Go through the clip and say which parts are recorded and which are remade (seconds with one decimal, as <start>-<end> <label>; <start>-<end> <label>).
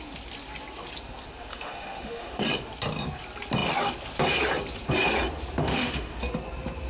0.0-1.5 recorded; 1.5-2.4 remade; 2.4-5.6 recorded; 5.6-6.1 remade; 6.1-6.9 recorded